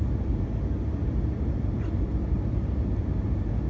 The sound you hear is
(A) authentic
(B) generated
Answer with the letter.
A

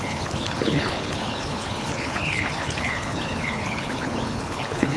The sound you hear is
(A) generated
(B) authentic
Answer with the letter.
A